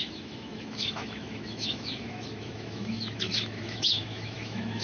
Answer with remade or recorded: remade